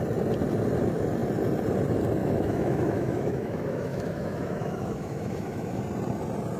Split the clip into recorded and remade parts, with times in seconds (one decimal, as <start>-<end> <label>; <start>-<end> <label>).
0.0-2.2 recorded; 2.2-5.8 remade; 5.8-6.6 recorded